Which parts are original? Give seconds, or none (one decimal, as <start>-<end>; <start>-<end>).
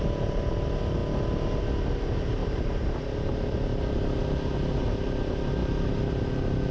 0.0-2.4; 4.7-6.7